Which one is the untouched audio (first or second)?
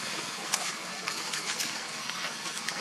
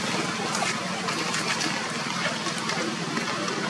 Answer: second